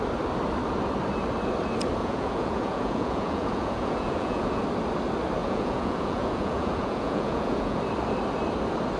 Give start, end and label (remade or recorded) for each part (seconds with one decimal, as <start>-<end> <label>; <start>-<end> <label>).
0.0-2.0 recorded; 2.0-4.6 remade; 4.6-5.4 recorded; 5.4-7.8 remade; 7.8-9.0 recorded